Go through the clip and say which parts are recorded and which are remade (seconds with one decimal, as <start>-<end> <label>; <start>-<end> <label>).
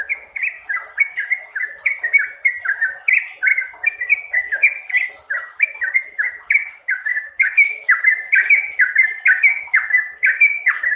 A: 0.0-7.1 recorded; 7.1-8.0 remade; 8.0-11.0 recorded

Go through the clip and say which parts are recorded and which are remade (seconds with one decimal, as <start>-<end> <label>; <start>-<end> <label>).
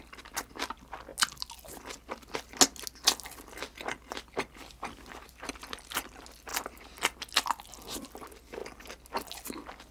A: 0.0-9.9 recorded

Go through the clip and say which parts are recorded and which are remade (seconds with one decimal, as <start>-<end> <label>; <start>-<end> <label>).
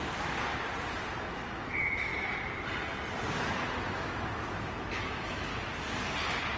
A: 0.0-1.2 recorded; 1.2-2.1 remade; 2.1-3.4 recorded; 3.4-5.5 remade; 5.5-6.6 recorded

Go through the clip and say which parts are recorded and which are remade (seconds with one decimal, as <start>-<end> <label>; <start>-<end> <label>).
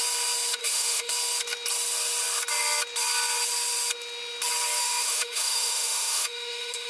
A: 0.0-0.6 recorded; 0.6-1.1 remade; 1.1-4.8 recorded; 4.8-6.9 remade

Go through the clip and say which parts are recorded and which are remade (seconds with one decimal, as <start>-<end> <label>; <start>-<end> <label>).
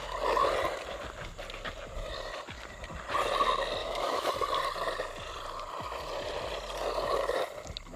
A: 0.0-3.8 recorded; 3.8-4.3 remade; 4.3-8.0 recorded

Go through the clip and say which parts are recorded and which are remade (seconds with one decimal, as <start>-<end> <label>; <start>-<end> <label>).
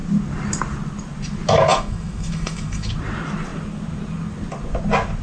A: 0.0-1.7 recorded; 1.7-2.9 remade; 2.9-5.2 recorded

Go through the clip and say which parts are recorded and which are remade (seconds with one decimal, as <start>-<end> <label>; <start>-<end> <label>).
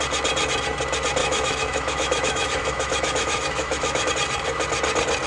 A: 0.0-1.2 recorded; 1.2-4.1 remade; 4.1-5.3 recorded